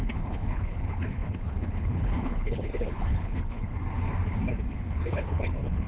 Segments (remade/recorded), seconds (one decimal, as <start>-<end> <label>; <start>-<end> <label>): 0.0-3.7 remade; 3.7-4.7 recorded; 4.7-5.9 remade